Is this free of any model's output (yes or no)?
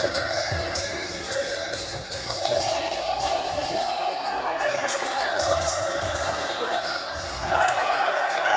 no